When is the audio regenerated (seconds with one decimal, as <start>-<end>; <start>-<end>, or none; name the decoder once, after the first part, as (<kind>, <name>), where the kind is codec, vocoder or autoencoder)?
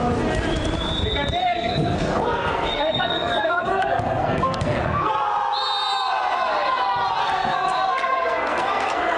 1.4-5.1 (codec, SNAC); 7.2-9.2